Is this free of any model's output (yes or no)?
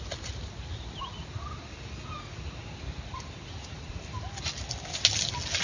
yes